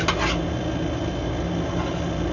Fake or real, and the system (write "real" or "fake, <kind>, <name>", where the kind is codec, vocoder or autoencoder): real